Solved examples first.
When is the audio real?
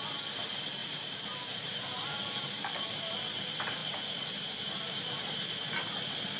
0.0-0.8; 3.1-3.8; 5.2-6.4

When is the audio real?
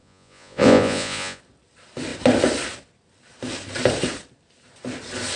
1.4-5.4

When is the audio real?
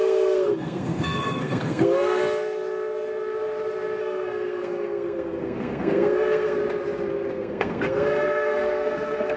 2.2-4.0; 6.6-7.3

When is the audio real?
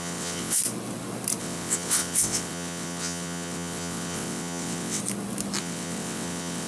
0.6-1.4; 5.0-5.6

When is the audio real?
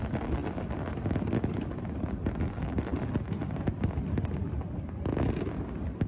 0.0-6.1